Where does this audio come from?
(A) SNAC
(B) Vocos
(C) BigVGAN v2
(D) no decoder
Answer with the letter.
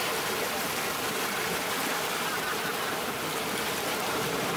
C